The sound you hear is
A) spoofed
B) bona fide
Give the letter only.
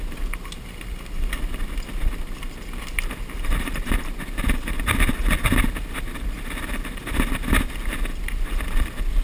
B